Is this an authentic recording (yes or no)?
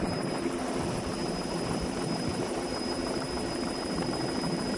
no